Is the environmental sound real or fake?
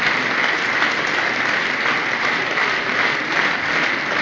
real